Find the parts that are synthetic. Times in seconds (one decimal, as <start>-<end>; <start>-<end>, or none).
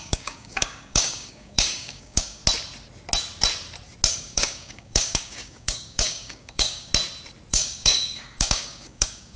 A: 0.0-2.4; 4.1-6.9; 7.5-9.4